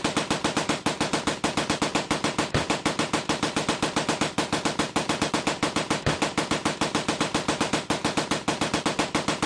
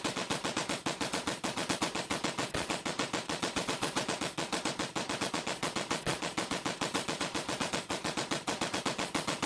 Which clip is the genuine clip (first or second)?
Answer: first